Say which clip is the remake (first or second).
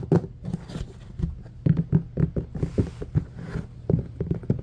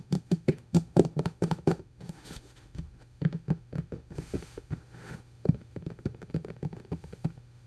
second